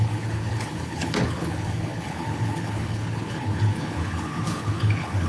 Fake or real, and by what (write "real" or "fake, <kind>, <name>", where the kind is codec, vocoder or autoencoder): fake, codec, HILCodec